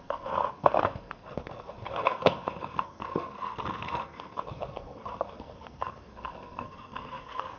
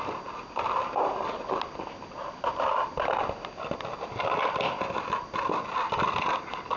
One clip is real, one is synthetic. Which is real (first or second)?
second